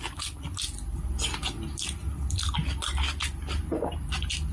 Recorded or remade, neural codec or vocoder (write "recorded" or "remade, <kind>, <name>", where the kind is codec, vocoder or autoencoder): recorded